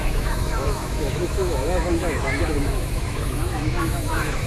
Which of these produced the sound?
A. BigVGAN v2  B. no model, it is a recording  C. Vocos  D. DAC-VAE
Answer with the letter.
D